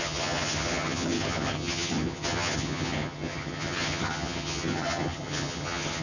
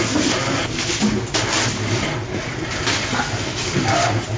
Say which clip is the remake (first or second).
first